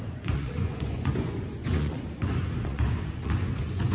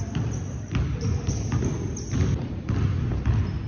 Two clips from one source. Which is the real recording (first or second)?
second